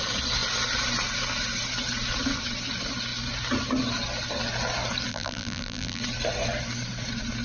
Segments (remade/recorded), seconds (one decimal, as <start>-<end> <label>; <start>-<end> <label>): 0.0-5.1 recorded; 5.1-6.0 remade; 6.0-7.4 recorded